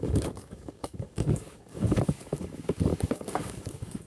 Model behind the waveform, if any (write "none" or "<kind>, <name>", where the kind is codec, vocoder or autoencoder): codec, DAC